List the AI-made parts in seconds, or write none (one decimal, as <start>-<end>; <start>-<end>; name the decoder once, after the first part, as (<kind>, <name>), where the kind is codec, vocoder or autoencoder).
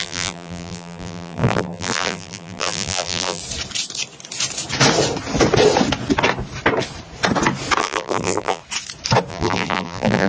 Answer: 0.0-3.4 (vocoder, BigVGAN v2); 7.8-8.6; 9.3-10.3